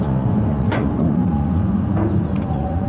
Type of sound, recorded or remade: remade